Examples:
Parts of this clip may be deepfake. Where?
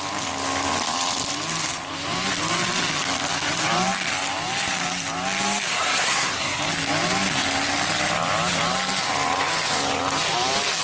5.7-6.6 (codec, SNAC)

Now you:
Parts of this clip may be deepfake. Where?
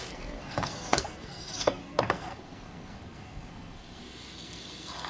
0.0-5.1 (codec, SNAC)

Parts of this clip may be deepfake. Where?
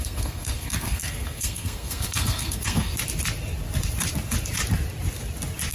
0.0-2.9 (codec, SNAC)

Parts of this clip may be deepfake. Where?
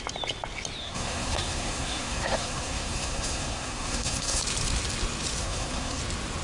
0.8-4.4 (codec, SNAC); 5.4-6.0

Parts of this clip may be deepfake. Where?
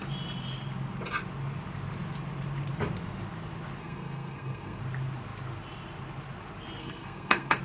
3.8-4.8 (codec, SNAC); 6.8-7.6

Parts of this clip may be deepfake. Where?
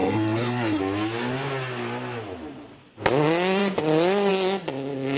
0.0-0.8 (codec, SNAC)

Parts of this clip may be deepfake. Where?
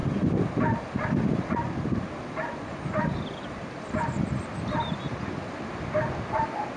none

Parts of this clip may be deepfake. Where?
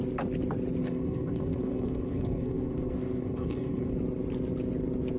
0.8-3.9 (codec, SNAC)